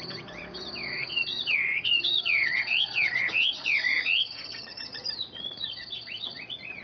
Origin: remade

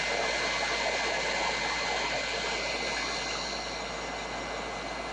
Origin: recorded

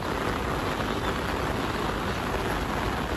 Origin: recorded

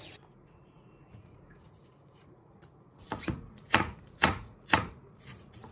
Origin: remade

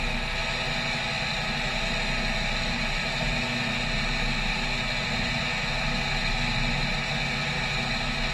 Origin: recorded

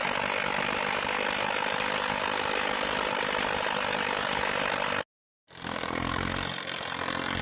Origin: recorded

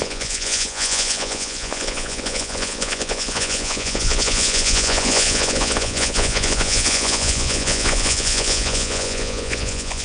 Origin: remade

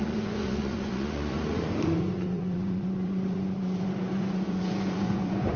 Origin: remade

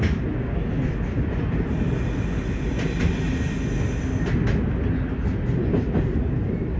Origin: recorded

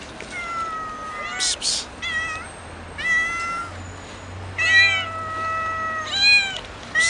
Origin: recorded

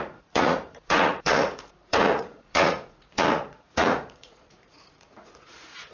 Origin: remade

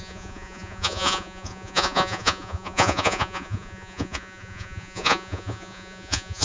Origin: remade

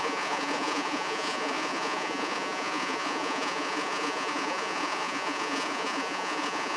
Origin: remade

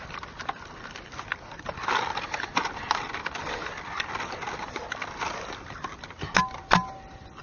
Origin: recorded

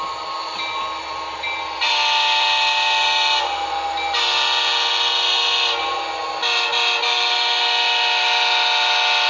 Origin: recorded